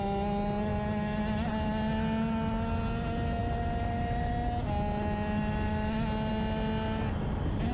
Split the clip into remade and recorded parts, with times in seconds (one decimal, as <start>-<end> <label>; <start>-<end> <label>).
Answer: 0.0-7.7 recorded